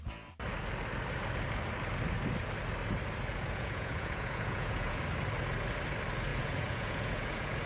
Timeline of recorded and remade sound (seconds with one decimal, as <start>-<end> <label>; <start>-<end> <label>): 0.0-3.3 recorded; 3.3-5.0 remade; 5.0-6.3 recorded; 6.3-7.7 remade